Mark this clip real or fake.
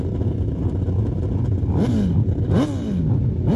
real